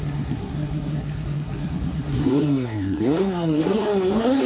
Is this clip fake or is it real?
fake